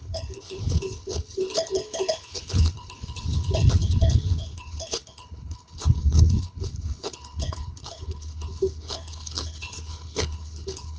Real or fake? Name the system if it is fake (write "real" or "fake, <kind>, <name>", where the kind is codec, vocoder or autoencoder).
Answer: fake, codec, HILCodec